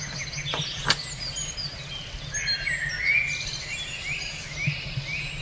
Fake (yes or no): no